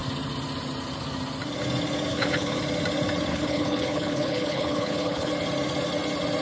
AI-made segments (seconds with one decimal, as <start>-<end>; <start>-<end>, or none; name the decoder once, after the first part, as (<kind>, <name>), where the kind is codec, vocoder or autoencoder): 2.1-2.6 (codec, HILCodec); 3.3-5.3